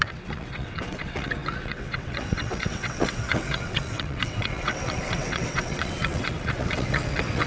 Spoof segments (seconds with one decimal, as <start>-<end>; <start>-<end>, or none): 0.0-7.5